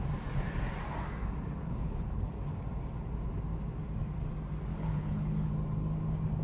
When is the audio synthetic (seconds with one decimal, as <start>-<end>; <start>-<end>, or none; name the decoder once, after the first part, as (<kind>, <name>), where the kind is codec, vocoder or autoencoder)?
1.6-2.3 (codec, HILCodec); 4.7-5.5